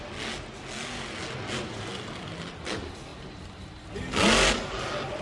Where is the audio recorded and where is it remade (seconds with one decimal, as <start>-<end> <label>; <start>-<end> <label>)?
0.0-5.2 recorded